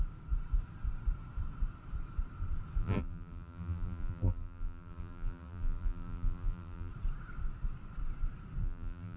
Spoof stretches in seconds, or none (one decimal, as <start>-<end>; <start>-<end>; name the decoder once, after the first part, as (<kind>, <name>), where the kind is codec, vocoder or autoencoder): 2.8-6.9 (vocoder, BigVGAN v2); 8.6-9.2